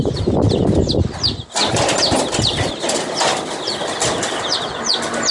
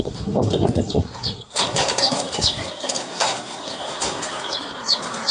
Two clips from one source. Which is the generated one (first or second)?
second